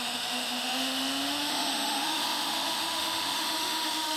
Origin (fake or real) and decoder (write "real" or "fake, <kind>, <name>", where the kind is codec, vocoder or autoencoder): fake, autoencoder, DAC-VAE